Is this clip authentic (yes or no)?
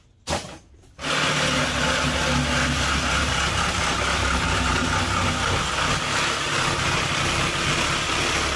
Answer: yes